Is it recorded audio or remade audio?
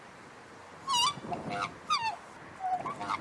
recorded